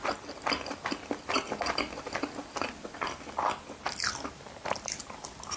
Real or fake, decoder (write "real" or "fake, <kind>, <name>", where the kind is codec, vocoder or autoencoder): real